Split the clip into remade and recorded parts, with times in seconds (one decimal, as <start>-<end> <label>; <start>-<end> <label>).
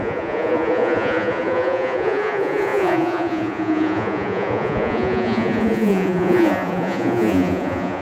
0.0-8.0 remade